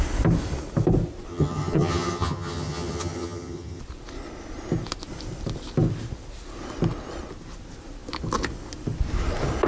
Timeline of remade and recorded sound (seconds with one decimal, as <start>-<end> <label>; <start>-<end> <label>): 0.0-1.3 recorded; 1.3-3.8 remade; 3.8-9.7 recorded

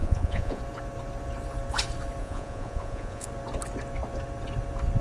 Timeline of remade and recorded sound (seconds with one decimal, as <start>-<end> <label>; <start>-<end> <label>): 0.0-0.6 remade; 0.6-2.2 recorded; 2.2-3.3 remade; 3.3-5.0 recorded